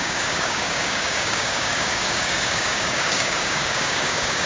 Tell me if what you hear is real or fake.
fake